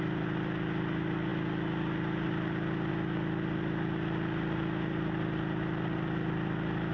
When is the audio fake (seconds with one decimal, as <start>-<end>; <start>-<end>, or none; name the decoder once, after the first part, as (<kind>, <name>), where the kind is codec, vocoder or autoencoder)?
none